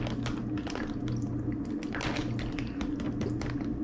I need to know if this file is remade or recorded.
recorded